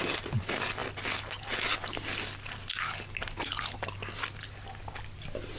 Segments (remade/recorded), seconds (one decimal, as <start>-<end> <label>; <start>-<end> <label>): 0.0-5.6 recorded